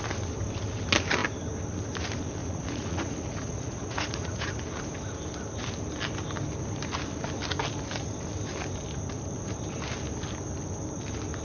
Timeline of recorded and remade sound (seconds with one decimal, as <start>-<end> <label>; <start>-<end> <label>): 0.0-2.4 recorded; 2.4-4.5 remade; 4.5-11.4 recorded